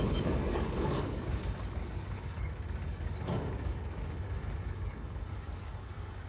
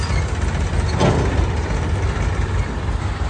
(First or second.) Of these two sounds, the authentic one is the second